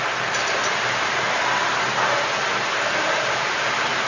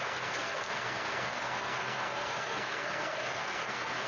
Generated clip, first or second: second